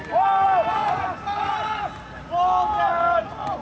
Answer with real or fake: real